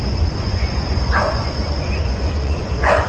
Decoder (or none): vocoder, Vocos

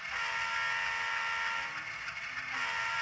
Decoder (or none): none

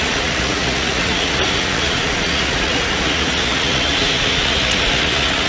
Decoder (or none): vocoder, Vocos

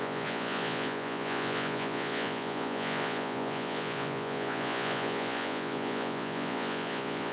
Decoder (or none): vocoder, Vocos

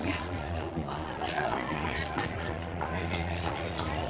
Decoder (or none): vocoder, Vocos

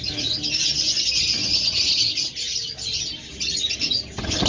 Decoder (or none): none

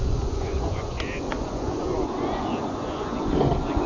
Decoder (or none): vocoder, Vocos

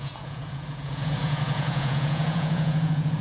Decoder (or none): vocoder, Vocos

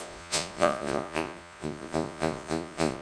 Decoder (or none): vocoder, Vocos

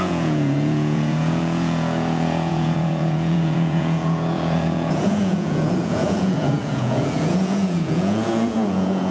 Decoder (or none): vocoder, Vocos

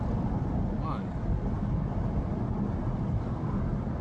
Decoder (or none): none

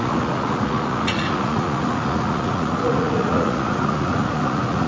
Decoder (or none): vocoder, Vocos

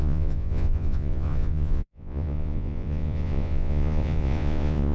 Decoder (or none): vocoder, Vocos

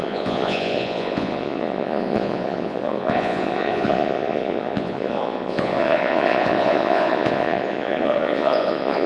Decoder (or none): vocoder, Vocos